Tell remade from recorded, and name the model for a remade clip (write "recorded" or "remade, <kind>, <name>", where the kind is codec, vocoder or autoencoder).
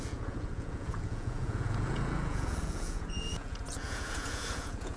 remade, vocoder, Vocos